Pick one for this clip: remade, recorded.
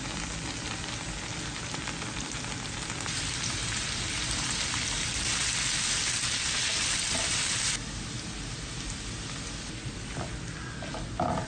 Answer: recorded